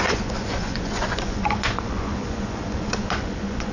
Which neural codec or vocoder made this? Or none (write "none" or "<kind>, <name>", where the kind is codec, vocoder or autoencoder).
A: vocoder, Vocos